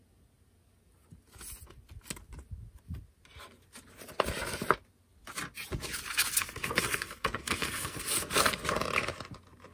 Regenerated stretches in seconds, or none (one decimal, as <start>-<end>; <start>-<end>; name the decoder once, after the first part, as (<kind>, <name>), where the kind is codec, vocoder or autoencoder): 6.3-8.4 (codec, SNAC)

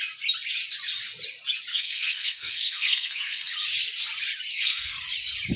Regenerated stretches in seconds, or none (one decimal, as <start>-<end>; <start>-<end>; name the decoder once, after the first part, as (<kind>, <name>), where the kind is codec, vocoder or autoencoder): 1.7-3.5 (codec, SNAC); 4.5-5.0

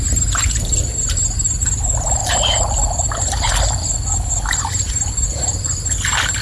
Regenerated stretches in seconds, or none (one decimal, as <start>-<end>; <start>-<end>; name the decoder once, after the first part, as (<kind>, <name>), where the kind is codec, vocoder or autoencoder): none

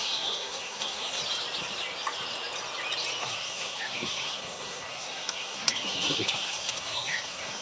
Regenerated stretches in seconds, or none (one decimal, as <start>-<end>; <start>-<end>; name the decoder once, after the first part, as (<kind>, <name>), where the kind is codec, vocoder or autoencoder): 0.0-1.2 (codec, SNAC); 3.2-7.6

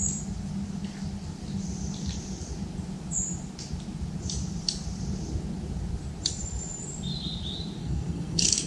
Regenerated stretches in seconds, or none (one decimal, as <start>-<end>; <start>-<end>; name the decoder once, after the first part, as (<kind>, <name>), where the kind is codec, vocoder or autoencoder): 7.8-8.7 (codec, SNAC)

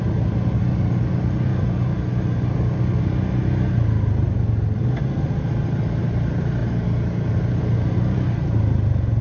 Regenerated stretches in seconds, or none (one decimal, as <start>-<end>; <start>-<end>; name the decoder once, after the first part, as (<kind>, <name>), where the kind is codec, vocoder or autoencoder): none

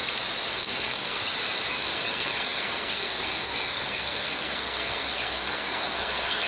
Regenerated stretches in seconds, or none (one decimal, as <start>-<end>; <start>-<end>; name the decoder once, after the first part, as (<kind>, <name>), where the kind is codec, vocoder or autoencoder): 0.5-1.2 (codec, SNAC); 1.7-6.5

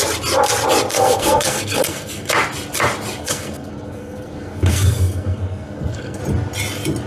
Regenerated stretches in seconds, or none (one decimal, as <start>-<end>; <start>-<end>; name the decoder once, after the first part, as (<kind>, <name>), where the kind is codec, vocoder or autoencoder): 0.9-2.3 (codec, SNAC); 3.2-6.2